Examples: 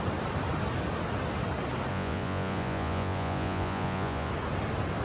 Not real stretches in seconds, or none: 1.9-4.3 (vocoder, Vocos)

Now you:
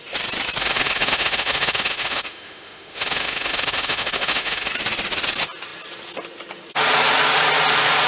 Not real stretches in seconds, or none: 0.6-4.7 (autoencoder, DAC-VAE)

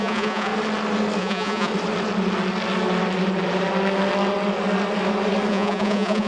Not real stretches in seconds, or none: 0.0-0.5 (vocoder, Vocos); 1.2-1.7; 5.5-6.3

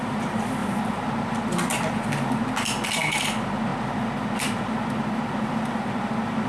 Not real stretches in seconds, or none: none